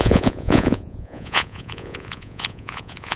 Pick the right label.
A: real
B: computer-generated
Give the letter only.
B